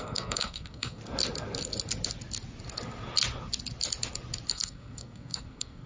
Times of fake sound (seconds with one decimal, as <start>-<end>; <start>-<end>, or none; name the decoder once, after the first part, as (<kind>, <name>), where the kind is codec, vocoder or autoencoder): 0.0-1.0 (codec, SNAC); 4.5-5.9